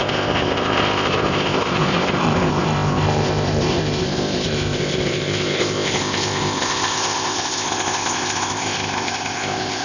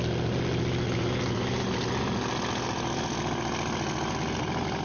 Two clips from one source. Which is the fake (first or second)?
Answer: first